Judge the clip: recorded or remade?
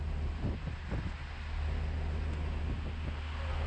recorded